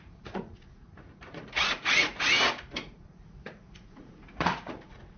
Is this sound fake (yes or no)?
yes